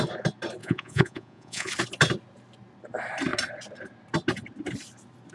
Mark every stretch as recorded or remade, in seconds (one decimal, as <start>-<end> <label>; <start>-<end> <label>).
0.0-0.6 recorded; 0.6-1.7 remade; 1.7-5.3 recorded